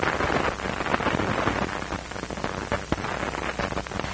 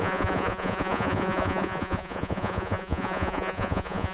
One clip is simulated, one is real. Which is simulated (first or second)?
second